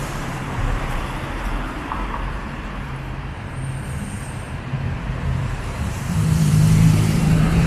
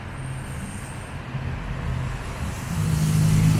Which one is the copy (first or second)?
first